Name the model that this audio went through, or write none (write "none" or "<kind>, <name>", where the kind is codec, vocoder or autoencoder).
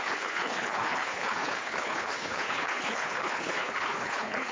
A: codec, HILCodec